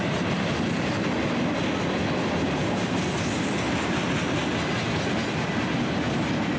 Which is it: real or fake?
real